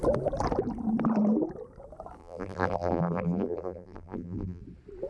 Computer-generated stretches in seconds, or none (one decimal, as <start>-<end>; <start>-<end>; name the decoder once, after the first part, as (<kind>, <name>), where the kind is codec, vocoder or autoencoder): 2.2-4.6 (vocoder, BigVGAN v2)